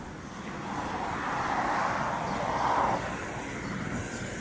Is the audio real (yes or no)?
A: yes